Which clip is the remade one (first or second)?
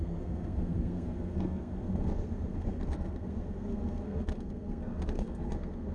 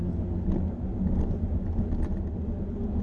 first